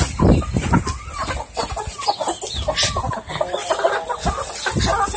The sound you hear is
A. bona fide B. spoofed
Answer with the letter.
A